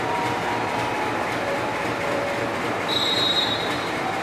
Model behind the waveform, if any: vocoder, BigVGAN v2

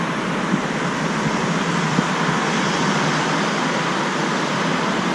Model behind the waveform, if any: vocoder, BigVGAN v2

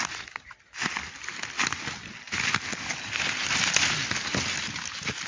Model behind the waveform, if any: none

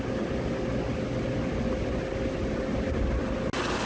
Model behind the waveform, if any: none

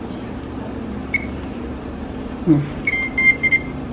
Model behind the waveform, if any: vocoder, BigVGAN v2